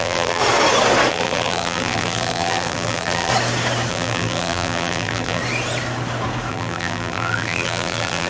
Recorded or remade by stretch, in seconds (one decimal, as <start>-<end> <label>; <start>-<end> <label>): 0.0-0.4 remade; 0.4-1.1 recorded; 1.1-3.3 remade; 3.3-3.9 recorded; 3.9-5.4 remade; 5.4-6.5 recorded; 6.5-8.3 remade